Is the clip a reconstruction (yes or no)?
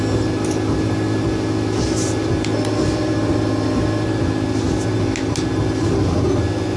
no